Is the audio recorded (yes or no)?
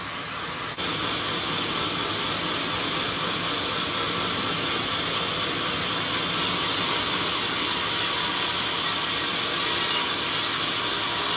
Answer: yes